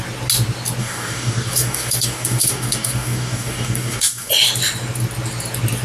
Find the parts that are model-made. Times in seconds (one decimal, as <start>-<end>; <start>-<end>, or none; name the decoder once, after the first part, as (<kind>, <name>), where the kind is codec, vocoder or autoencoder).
0.8-4.3 (codec, DAC)